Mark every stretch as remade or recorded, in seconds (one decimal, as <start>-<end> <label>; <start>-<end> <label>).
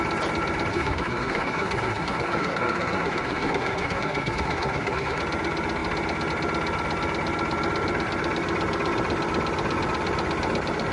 0.0-0.7 recorded; 0.7-5.2 remade; 5.2-10.9 recorded